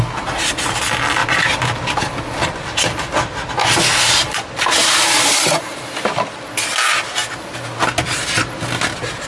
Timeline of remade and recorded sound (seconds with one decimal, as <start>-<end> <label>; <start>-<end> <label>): 0.0-1.2 recorded; 1.2-2.0 remade; 2.0-4.8 recorded; 4.8-5.6 remade; 5.6-9.3 recorded